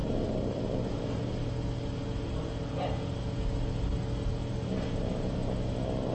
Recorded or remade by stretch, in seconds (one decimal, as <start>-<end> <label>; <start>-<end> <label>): 0.0-1.0 remade; 1.0-6.1 recorded